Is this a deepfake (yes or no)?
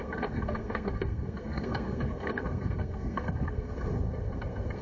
yes